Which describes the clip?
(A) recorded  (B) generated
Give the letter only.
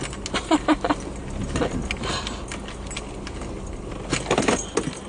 A